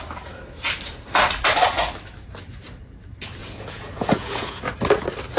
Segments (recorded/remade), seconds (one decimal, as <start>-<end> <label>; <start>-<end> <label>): 0.0-3.4 recorded; 3.4-4.7 remade; 4.7-5.4 recorded